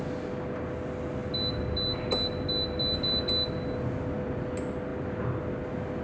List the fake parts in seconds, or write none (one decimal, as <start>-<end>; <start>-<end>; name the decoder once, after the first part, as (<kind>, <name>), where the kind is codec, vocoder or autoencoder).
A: none

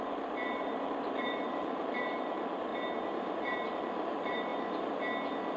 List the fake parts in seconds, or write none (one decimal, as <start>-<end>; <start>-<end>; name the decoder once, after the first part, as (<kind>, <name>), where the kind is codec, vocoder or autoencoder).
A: 0.0-2.7 (vocoder, BigVGAN v2); 3.4-4.5

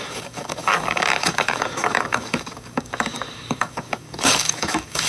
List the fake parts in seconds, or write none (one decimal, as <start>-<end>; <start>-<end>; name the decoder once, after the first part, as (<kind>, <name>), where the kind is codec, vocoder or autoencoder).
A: 0.0-5.1 (codec, DAC)

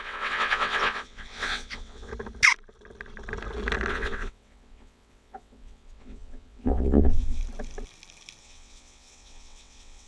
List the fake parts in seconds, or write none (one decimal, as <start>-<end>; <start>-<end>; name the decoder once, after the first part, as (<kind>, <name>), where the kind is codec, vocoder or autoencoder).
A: 0.0-2.1 (vocoder, WaveNeXt); 3.9-7.4; 8.4-10.1